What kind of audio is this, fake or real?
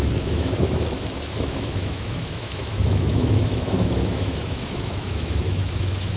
fake